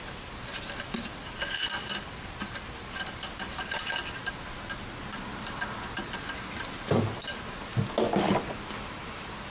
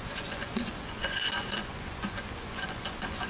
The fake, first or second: second